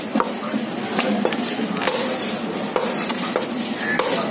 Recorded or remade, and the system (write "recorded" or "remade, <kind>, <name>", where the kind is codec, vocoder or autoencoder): recorded